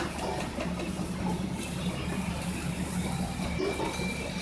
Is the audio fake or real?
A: real